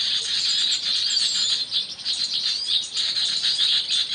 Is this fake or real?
real